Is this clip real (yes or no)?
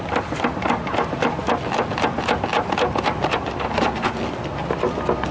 yes